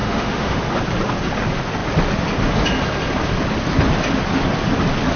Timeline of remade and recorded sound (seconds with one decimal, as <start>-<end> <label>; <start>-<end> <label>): 0.0-0.6 remade; 0.6-5.2 recorded